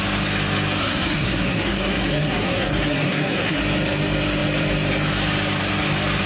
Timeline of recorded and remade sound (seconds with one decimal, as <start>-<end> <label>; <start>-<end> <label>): 0.0-0.8 recorded; 0.8-3.6 remade; 3.6-6.3 recorded